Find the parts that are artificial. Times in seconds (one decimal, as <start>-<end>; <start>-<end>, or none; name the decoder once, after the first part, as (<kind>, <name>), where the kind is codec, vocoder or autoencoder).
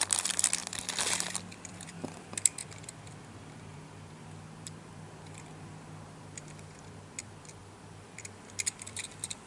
0.0-0.6 (vocoder, BigVGAN v2); 1.7-9.5